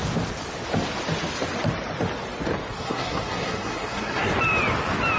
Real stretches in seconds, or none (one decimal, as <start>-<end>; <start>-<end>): 0.0-2.7; 4.3-5.2